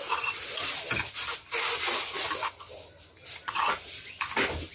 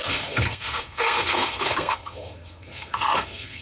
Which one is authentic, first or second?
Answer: first